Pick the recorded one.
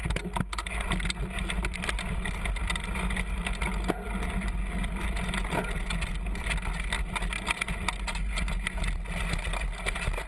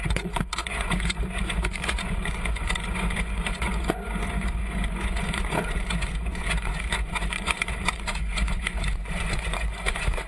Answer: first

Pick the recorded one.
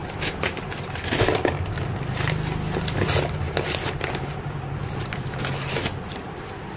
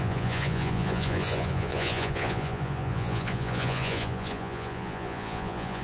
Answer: first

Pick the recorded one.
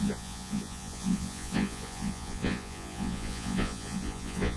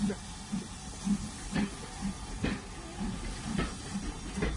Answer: second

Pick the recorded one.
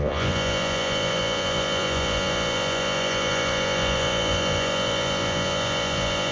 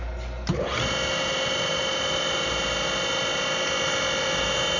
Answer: second